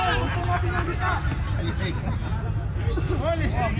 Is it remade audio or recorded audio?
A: recorded